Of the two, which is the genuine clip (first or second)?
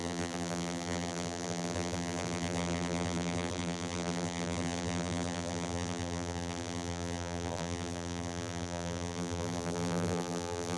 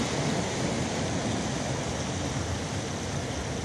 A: second